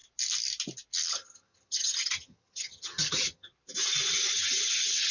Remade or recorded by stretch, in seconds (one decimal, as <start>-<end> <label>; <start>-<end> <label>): 0.0-1.1 recorded; 1.1-3.5 remade; 3.5-4.1 recorded; 4.1-5.1 remade